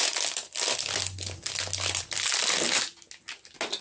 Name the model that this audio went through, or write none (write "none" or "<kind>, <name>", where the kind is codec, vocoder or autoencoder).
none